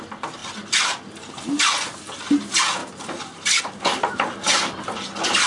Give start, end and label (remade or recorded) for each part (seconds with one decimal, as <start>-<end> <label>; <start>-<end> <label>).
0.0-5.5 recorded